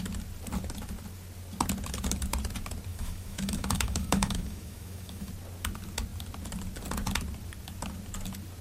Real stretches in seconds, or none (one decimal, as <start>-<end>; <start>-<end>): 0.0-2.9; 5.3-8.6